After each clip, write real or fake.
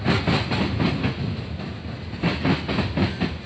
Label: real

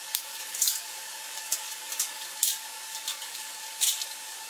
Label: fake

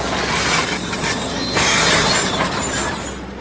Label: real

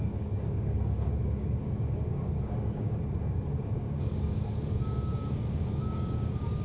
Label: fake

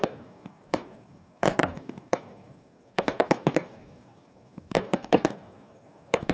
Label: fake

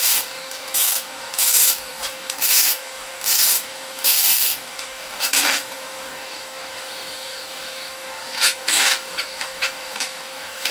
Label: fake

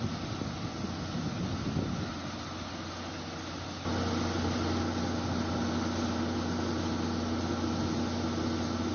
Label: real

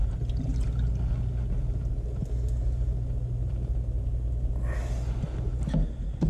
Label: real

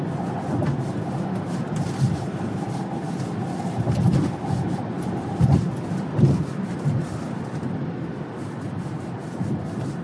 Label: real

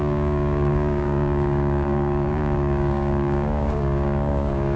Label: fake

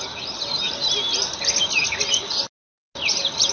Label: real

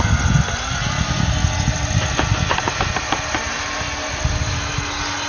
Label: real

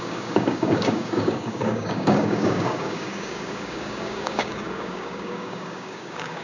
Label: fake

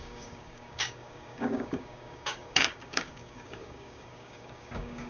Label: fake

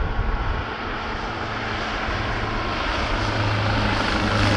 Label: real